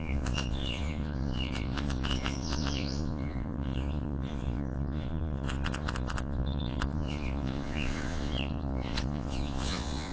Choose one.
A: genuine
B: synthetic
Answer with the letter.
B